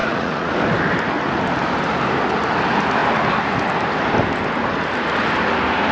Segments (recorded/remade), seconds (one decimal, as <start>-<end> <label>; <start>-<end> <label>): 0.0-0.5 remade; 0.5-5.9 recorded